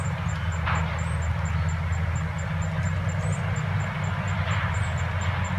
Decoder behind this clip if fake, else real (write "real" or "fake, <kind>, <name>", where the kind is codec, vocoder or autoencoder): real